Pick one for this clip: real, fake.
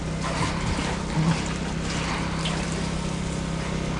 real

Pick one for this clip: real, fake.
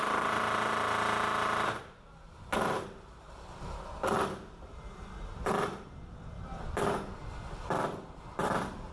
real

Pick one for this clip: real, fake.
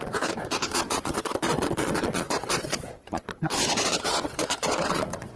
fake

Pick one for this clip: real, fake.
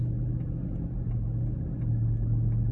real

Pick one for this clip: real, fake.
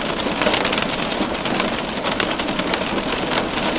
real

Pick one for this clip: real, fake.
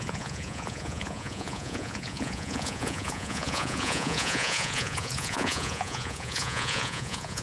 fake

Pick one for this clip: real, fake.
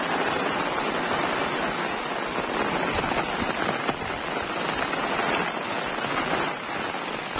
real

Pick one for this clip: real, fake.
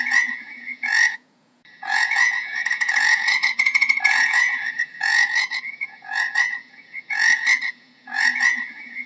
fake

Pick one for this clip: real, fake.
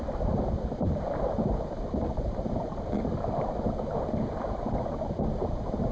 real